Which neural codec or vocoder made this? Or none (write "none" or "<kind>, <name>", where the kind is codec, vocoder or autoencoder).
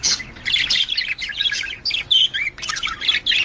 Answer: none